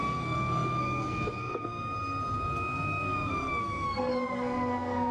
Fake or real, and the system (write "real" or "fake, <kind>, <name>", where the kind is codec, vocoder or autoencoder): fake, codec, SNAC